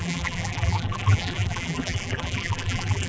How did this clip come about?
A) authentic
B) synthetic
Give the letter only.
B